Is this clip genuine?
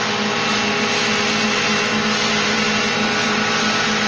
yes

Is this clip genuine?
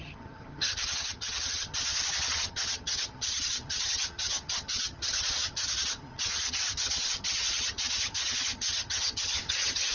no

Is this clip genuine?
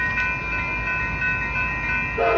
yes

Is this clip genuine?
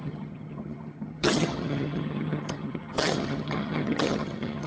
no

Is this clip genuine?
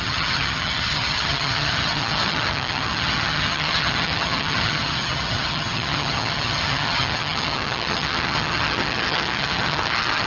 no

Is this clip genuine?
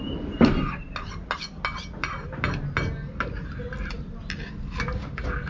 yes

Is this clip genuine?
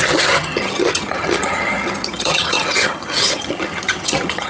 no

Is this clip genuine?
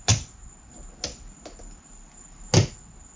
yes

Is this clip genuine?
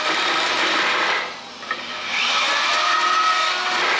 yes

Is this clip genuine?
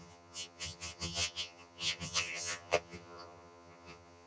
no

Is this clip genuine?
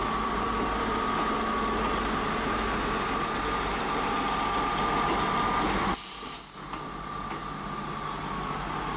yes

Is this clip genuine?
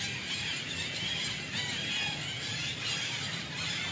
yes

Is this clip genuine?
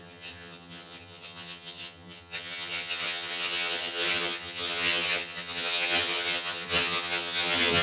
no